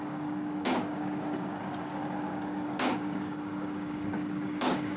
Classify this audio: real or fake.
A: fake